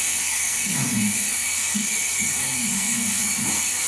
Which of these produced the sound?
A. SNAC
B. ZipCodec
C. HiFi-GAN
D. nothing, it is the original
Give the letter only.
A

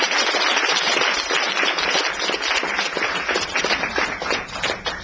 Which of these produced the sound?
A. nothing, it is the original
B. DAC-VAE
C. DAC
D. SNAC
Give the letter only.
A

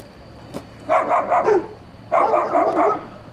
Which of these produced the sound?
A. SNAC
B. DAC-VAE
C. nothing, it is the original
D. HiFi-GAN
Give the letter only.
C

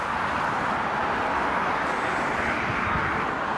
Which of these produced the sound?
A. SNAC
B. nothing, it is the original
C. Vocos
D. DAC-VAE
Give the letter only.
B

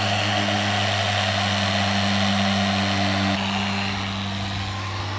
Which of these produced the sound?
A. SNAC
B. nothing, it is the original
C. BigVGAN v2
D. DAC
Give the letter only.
B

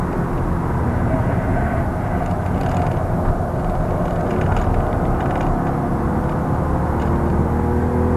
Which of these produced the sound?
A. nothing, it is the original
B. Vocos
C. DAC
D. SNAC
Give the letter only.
A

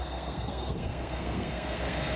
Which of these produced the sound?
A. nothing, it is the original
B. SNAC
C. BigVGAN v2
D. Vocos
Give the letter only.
B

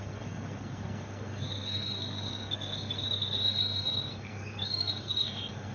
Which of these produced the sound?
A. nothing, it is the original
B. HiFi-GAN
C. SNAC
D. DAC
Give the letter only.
C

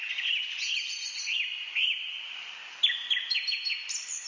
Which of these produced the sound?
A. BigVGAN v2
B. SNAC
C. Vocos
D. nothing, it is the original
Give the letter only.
D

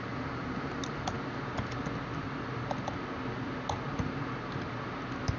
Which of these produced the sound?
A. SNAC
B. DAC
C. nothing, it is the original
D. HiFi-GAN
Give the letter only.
C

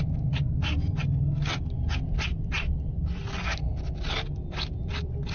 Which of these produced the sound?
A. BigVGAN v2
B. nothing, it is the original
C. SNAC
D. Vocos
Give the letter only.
B